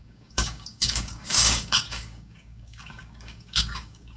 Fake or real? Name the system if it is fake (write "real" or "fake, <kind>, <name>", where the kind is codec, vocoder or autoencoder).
fake, codec, DAC